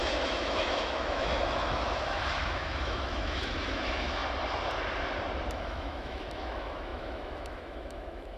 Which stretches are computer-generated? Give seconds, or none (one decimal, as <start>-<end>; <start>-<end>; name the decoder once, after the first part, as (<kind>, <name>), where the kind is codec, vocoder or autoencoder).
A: 0.0-4.2 (autoencoder, DAC-VAE); 5.5-8.4